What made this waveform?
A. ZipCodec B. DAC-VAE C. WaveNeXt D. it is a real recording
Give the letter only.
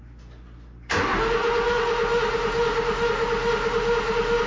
D